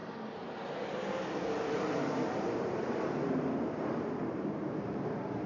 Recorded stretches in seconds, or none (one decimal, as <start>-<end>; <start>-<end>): none